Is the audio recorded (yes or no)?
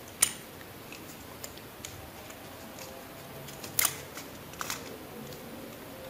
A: yes